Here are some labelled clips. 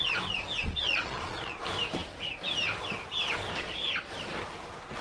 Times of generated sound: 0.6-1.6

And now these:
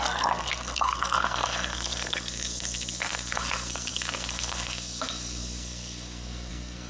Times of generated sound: 0.0-6.9